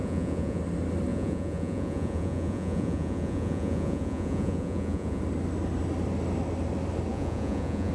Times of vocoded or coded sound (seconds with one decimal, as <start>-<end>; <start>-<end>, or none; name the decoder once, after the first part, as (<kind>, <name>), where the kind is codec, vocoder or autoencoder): 0.0-0.6 (vocoder, Vocos); 1.1-5.2; 7.1-7.9